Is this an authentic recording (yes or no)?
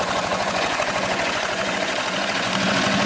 no